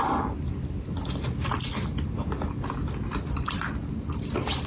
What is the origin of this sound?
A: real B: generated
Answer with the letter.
A